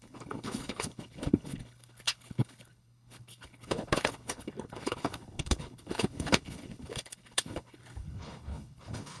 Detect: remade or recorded remade